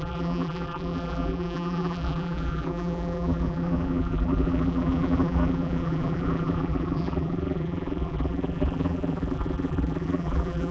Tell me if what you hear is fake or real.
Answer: fake